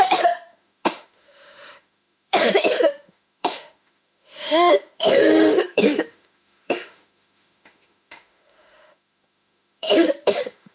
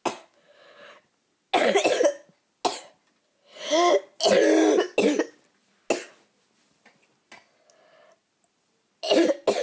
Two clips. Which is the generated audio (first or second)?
first